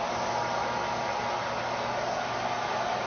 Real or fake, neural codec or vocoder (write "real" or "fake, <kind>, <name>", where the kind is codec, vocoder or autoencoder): real